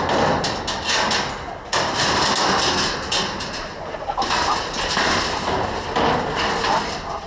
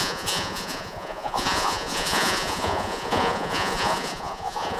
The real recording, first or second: first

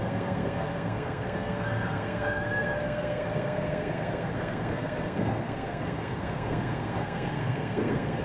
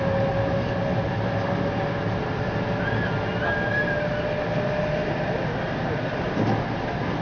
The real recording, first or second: second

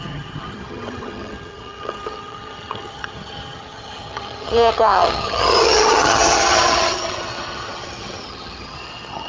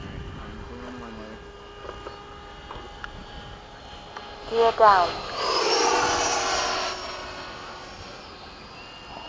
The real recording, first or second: second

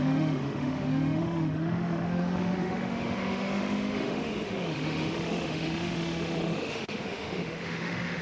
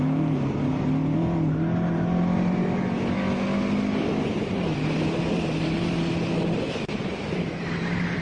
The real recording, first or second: second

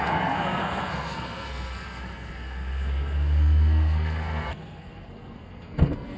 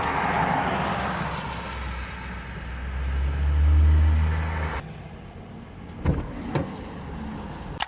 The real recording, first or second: second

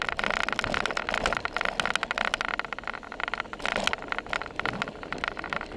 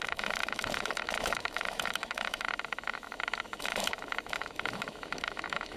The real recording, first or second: first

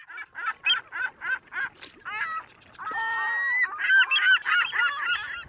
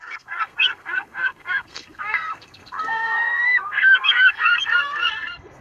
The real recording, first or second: first